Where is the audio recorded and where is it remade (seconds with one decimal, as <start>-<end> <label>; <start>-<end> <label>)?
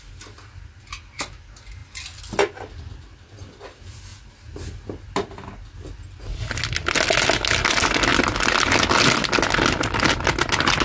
0.0-10.8 recorded